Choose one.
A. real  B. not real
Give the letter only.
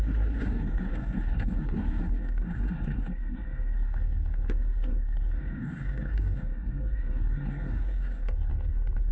B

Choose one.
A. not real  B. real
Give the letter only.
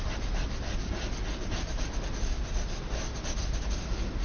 B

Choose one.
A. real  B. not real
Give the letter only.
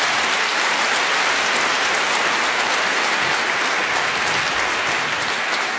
A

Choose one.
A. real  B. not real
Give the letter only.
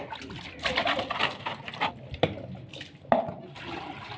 A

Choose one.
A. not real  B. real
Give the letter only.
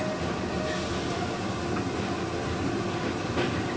B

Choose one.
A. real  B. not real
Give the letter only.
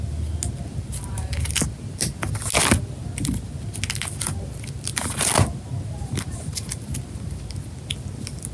A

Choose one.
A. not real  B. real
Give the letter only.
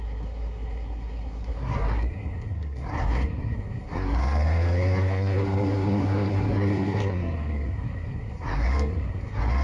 A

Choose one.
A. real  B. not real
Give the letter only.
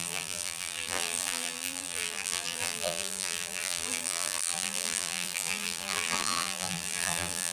B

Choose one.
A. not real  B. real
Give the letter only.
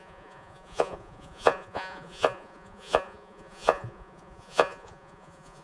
A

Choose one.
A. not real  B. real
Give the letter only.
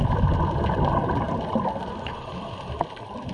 B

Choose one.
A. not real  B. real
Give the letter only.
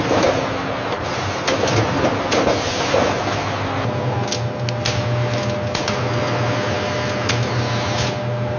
B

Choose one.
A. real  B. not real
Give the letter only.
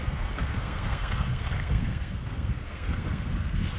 B